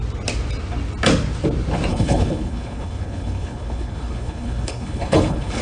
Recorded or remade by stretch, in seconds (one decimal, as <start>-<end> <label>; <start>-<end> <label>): 0.0-1.9 recorded; 1.9-5.6 remade